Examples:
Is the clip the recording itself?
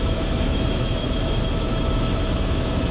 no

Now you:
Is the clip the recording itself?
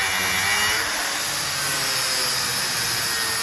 yes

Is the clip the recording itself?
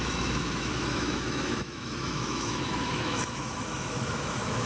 no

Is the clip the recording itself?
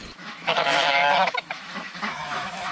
no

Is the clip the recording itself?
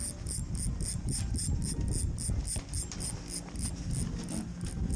yes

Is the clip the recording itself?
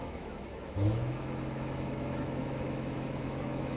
no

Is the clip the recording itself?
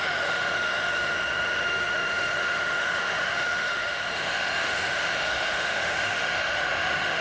no